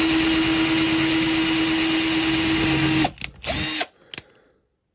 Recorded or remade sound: recorded